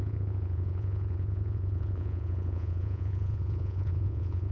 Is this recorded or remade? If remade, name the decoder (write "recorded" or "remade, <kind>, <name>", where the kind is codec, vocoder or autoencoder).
remade, vocoder, Vocos